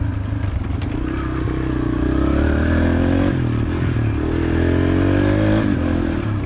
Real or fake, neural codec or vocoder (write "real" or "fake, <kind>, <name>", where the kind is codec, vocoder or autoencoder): real